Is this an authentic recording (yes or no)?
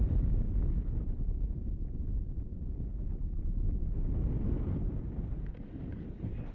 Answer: yes